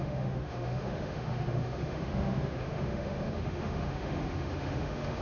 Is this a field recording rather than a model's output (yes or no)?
no